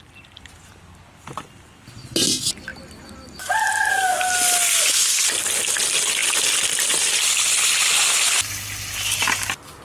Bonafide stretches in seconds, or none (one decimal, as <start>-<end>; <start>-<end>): 0.0-9.8

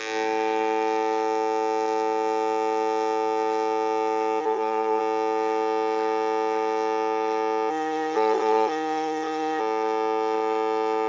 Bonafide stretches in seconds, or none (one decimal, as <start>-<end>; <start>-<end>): 0.0-4.4; 5.0-7.7; 9.6-11.1

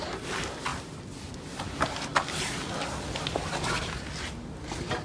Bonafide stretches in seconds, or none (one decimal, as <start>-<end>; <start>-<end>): 0.0-5.0

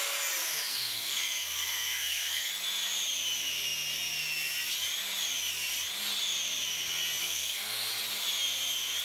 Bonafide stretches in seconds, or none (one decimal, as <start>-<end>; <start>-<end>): 0.0-0.4; 2.5-7.2; 7.9-9.0

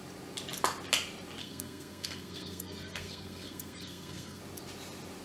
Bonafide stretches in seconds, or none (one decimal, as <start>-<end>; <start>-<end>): 0.0-1.4; 4.4-5.2

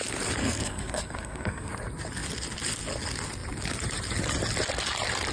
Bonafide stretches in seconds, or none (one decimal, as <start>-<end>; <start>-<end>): 0.0-0.4; 1.7-5.3

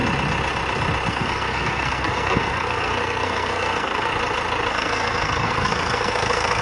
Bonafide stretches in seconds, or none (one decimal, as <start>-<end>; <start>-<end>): 0.0-1.1; 4.1-4.7

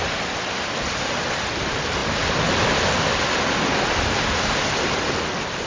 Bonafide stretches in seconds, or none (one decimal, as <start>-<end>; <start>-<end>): 0.0-5.7